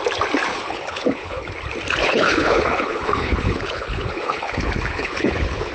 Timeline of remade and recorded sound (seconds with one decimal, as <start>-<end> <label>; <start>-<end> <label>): 0.0-0.5 recorded; 0.5-1.5 remade; 1.5-2.0 recorded; 2.0-5.7 remade